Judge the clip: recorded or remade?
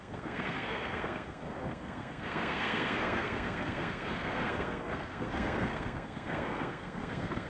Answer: remade